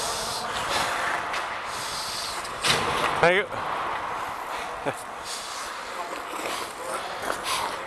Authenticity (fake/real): real